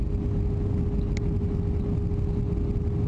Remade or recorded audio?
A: recorded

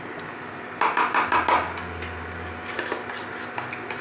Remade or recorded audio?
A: recorded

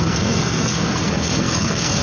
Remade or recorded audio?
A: remade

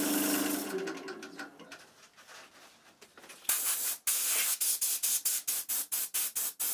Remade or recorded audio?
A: recorded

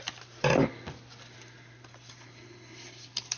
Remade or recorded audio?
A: remade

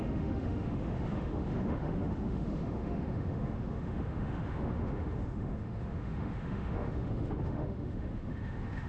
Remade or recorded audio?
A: remade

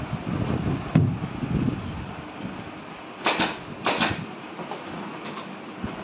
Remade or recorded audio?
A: recorded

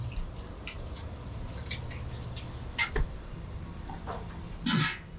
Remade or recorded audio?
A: recorded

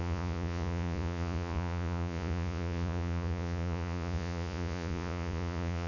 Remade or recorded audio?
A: remade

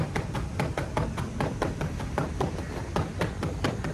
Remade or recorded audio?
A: recorded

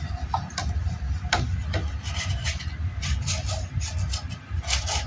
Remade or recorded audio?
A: recorded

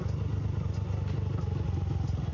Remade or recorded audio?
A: recorded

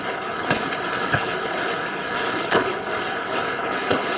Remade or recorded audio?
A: remade